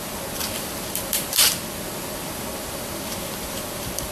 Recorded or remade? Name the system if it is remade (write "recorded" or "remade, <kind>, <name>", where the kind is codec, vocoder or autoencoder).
remade, vocoder, BigVGAN v2